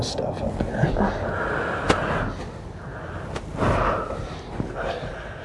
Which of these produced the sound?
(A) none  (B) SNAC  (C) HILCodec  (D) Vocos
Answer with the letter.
A